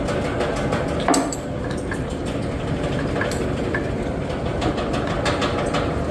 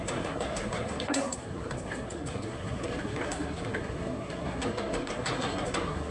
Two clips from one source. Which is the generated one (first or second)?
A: second